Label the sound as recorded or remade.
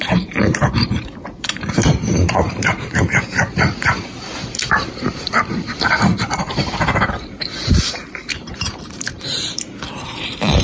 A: remade